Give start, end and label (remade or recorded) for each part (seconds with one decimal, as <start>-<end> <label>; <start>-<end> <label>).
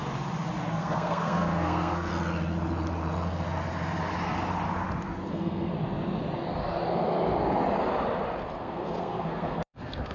0.0-0.7 recorded; 0.7-2.1 remade; 2.1-5.3 recorded; 5.3-5.7 remade; 5.7-8.6 recorded; 8.6-10.1 remade